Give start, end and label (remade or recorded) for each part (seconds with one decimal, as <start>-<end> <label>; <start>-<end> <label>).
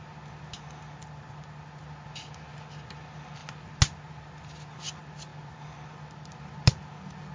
0.0-7.3 recorded